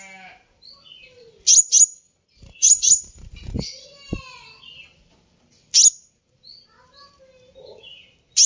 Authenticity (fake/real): real